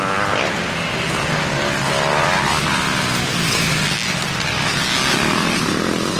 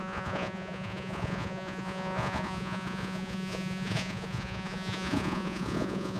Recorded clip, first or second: first